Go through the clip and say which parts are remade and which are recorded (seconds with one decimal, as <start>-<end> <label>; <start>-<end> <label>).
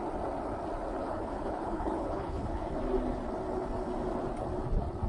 0.0-1.0 recorded; 1.0-2.7 remade; 2.7-5.1 recorded